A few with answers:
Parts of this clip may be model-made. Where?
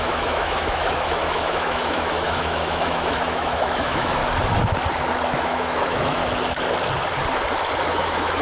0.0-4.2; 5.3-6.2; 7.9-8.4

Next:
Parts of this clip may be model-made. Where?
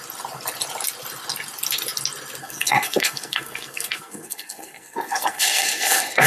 2.4-6.3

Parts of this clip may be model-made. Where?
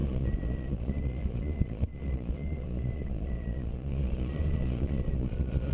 0.0-5.7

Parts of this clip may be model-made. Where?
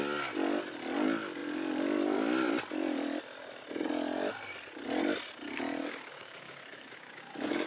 5.8-7.7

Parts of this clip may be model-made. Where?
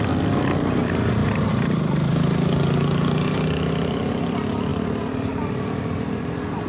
4.7-5.4